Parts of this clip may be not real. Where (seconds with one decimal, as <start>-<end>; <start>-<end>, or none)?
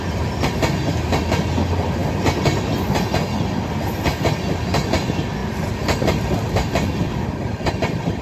none